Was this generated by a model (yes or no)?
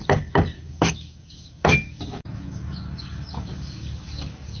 yes